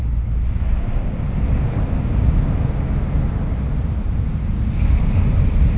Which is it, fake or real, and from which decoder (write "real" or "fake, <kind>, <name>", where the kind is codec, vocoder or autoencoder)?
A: real